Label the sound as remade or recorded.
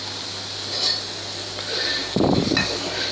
recorded